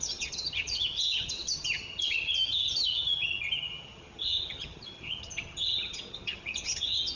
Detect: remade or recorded remade